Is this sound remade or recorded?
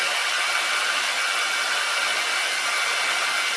recorded